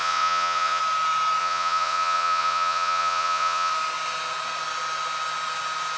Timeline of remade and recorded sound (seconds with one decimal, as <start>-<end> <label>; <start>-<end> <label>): 0.0-0.8 remade; 0.8-1.4 recorded; 1.4-3.7 remade; 3.7-6.0 recorded